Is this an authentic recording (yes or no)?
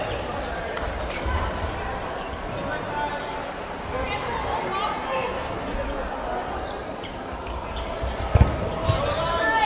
yes